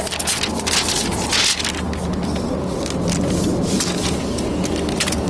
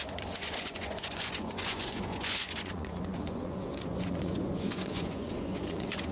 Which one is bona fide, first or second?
first